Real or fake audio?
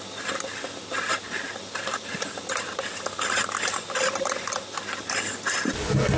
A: real